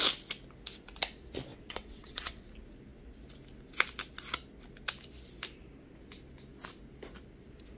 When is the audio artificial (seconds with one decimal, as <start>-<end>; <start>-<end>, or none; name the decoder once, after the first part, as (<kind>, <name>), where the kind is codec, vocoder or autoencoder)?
1.5-2.4 (vocoder, WaveNeXt)